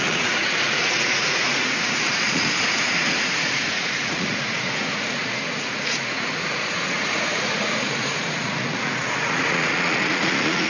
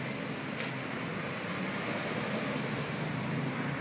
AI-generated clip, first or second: first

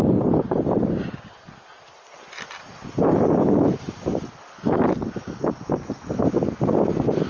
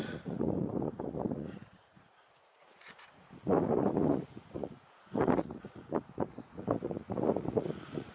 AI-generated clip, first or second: second